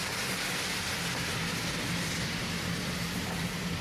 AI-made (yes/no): no